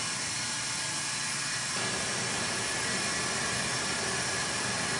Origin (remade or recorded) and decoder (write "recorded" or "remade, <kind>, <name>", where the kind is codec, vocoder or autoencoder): recorded